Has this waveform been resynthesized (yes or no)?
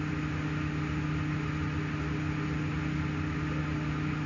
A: no